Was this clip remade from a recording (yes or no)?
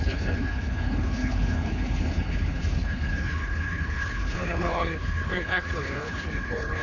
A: yes